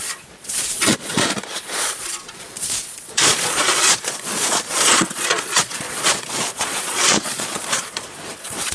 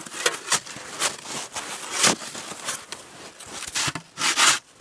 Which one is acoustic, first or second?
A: second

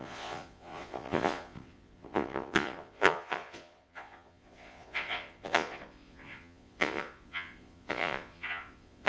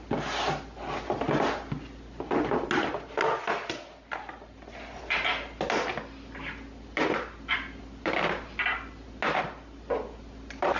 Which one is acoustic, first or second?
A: second